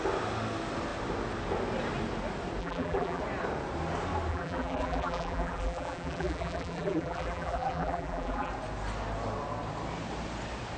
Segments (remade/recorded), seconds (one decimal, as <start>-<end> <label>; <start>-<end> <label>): 0.0-2.6 recorded; 2.6-3.2 remade; 3.2-4.3 recorded; 4.3-8.5 remade; 8.5-10.8 recorded